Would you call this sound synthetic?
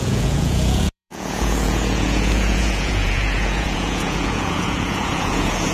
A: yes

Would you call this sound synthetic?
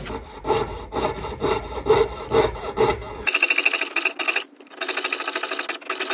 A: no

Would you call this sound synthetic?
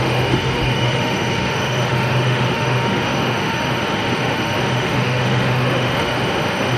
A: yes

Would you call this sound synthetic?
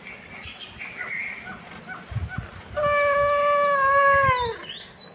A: no